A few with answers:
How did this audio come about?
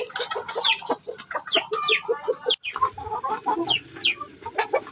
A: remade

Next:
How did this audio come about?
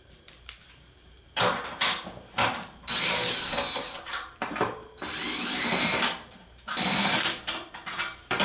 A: remade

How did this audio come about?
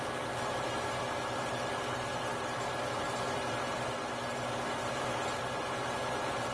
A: recorded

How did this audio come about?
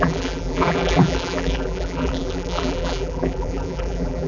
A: remade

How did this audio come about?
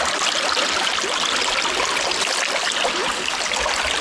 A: recorded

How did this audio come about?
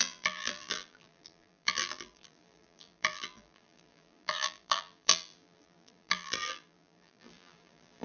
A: remade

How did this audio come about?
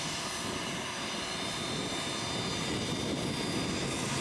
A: recorded